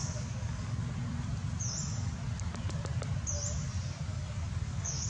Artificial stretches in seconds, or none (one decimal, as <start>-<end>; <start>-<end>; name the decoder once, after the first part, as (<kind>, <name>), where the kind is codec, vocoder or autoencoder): 0.0-0.8 (codec, DAC); 4.1-5.1